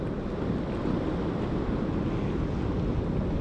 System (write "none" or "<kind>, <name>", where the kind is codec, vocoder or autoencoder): none